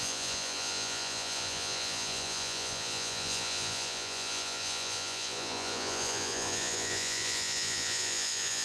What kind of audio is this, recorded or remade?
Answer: remade